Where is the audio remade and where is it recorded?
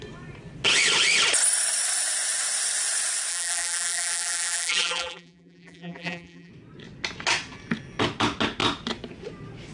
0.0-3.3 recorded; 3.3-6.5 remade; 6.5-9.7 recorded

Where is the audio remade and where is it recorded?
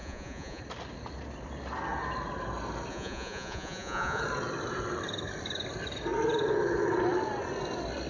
0.0-0.6 remade; 0.6-2.9 recorded; 2.9-4.2 remade; 4.2-8.1 recorded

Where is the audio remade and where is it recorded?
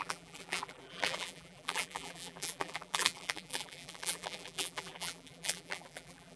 0.0-6.4 remade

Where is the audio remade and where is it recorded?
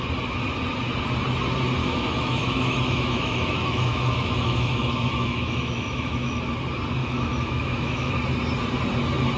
0.0-1.8 recorded; 1.8-6.4 remade; 6.4-7.0 recorded; 7.0-8.1 remade; 8.1-9.4 recorded